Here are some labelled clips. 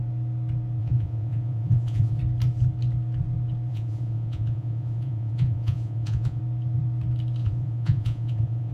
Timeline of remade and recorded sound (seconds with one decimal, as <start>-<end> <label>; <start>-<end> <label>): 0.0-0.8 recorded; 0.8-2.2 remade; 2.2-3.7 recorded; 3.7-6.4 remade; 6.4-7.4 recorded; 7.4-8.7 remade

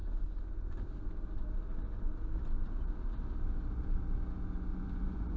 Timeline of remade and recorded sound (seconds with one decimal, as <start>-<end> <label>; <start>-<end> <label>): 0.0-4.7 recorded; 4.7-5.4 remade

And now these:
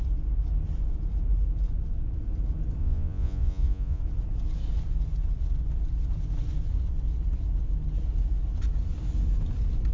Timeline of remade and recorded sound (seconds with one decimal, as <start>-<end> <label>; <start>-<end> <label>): 0.0-2.8 recorded; 2.8-4.0 remade; 4.0-9.9 recorded

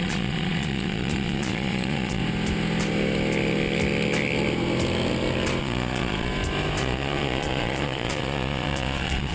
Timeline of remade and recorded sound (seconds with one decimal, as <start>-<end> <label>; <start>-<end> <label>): 0.0-2.2 remade; 2.2-5.6 recorded; 5.6-6.3 remade; 6.3-6.8 recorded; 6.8-9.3 remade

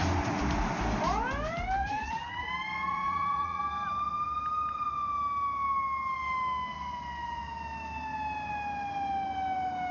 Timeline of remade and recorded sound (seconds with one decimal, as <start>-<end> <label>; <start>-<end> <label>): 0.0-1.8 recorded; 1.8-2.5 remade; 2.5-2.9 recorded; 2.9-3.6 remade; 3.6-9.9 recorded